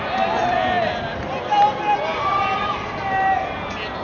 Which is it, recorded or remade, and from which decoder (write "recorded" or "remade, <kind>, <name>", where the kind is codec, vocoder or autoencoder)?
recorded